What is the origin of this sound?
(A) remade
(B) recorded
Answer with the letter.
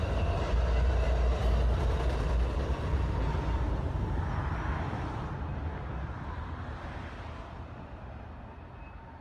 B